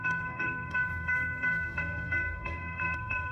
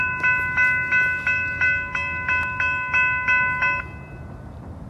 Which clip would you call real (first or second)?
second